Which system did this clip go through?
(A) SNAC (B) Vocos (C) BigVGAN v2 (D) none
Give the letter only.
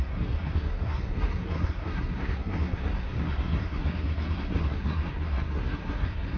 A